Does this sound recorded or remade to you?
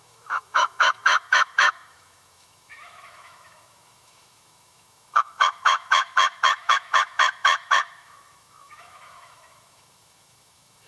remade